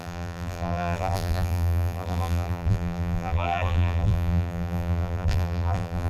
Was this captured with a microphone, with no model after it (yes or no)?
no